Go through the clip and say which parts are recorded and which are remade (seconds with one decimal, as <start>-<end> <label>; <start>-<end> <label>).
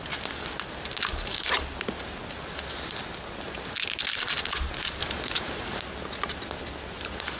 0.0-1.1 recorded; 1.1-1.6 remade; 1.6-5.0 recorded; 5.0-5.8 remade; 5.8-7.4 recorded